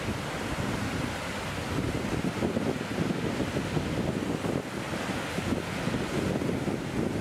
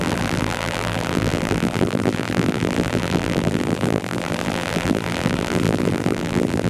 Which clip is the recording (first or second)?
first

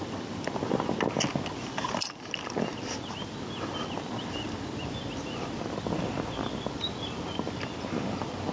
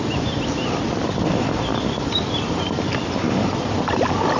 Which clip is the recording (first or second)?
first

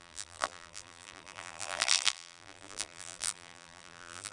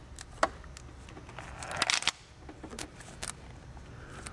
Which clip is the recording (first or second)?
second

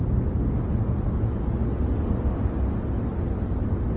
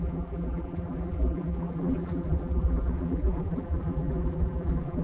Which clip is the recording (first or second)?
first